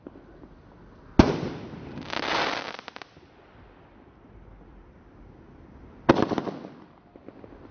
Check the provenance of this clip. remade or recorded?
recorded